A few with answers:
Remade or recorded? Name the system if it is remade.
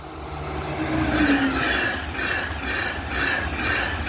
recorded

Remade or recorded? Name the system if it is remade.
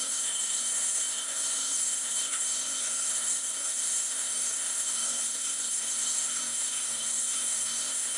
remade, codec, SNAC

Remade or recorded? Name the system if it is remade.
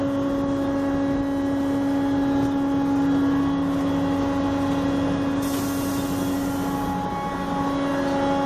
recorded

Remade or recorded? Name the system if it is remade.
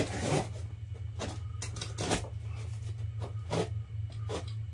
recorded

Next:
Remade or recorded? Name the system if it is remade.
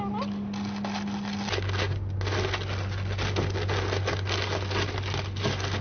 recorded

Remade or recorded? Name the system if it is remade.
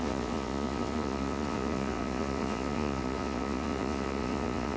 remade, vocoder, Vocos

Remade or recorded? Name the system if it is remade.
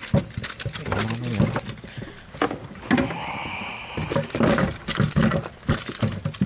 recorded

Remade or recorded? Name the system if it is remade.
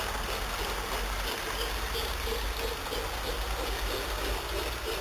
recorded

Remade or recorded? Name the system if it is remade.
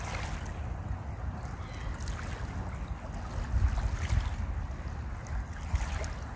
recorded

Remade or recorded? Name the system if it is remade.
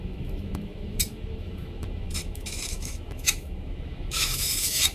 remade, autoencoder, DAC-VAE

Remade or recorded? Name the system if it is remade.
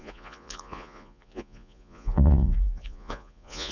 remade, vocoder, Vocos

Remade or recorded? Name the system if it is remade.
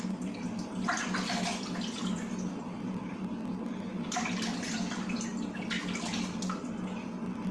recorded